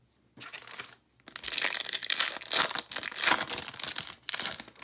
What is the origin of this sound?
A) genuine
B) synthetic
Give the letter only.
A